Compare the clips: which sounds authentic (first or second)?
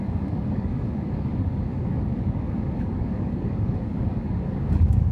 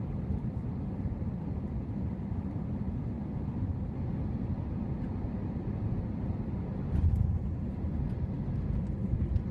second